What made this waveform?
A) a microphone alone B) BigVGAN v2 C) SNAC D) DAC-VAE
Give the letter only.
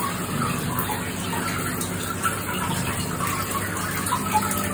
A